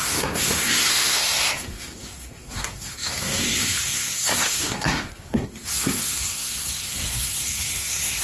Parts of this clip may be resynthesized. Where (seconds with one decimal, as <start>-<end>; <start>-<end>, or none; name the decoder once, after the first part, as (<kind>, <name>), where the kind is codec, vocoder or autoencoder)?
0.0-8.2 (codec, SNAC)